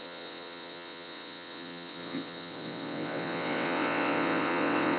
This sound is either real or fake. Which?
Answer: fake